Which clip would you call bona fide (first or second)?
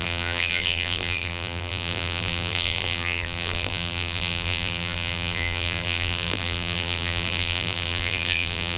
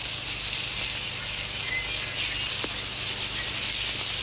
second